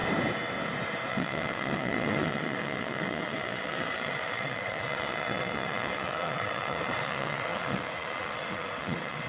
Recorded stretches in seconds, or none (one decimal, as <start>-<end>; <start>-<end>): 0.0-1.1